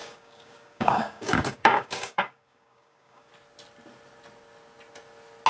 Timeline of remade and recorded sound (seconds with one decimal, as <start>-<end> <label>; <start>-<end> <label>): 0.0-3.3 remade; 3.3-5.5 recorded